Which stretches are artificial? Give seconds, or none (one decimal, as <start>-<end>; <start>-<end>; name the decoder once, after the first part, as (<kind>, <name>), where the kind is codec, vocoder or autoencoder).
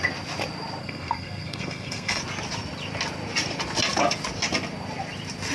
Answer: 0.8-2.2 (codec, SNAC)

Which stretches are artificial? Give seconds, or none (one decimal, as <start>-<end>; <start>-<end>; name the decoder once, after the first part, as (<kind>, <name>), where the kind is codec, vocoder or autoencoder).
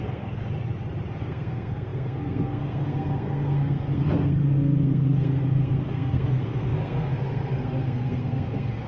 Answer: 0.0-0.4 (codec, SNAC); 1.2-8.9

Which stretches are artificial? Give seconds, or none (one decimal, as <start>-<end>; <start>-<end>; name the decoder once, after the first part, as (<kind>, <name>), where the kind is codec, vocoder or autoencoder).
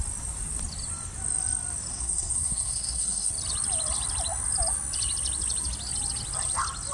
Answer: 1.9-3.3 (codec, SNAC)